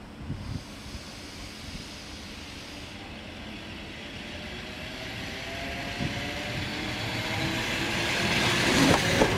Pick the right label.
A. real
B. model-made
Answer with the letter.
A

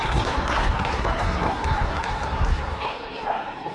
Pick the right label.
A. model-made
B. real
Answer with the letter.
A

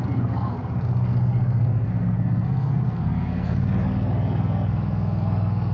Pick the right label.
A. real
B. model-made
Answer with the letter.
B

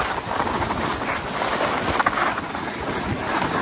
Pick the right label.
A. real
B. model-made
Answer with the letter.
A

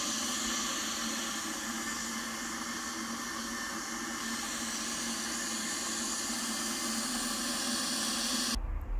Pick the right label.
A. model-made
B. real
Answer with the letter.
B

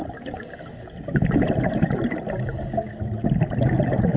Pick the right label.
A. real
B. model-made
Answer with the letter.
A